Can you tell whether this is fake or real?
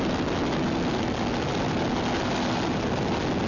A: real